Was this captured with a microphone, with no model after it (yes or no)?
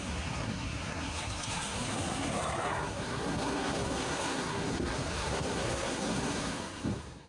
no